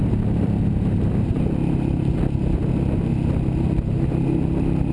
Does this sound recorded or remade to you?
recorded